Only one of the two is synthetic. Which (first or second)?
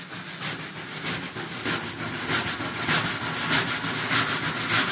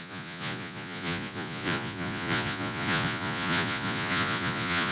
second